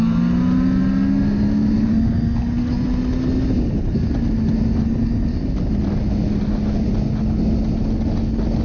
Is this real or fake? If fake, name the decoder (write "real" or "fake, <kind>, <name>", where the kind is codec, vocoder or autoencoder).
real